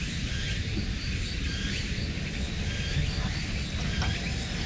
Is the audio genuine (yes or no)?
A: yes